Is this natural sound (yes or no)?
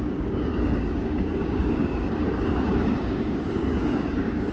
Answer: no